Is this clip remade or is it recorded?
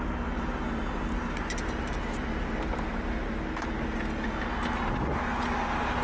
recorded